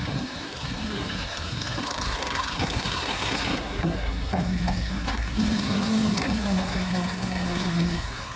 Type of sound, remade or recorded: remade